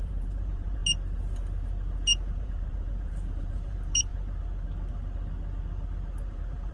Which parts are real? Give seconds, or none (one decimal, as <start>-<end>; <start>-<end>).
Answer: 0.8-2.3; 4.1-6.3